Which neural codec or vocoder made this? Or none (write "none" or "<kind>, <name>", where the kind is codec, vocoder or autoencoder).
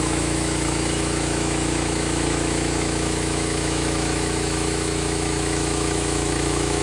autoencoder, DAC-VAE